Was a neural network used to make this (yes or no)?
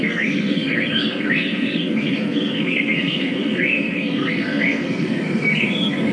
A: yes